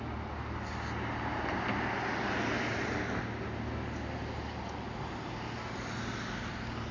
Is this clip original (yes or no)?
yes